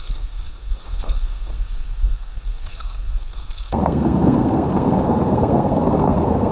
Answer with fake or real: fake